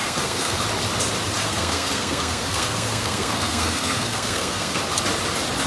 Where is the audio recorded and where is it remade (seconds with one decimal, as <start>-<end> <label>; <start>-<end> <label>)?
0.0-0.6 remade; 0.6-1.4 recorded; 1.4-4.8 remade; 4.8-5.7 recorded